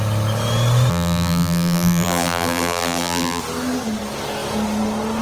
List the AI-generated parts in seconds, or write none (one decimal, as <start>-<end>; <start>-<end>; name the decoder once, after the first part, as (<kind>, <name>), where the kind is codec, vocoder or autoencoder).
0.9-3.4 (vocoder, BigVGAN v2)